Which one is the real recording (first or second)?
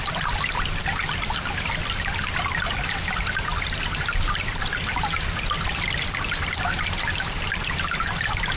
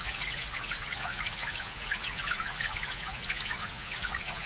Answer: first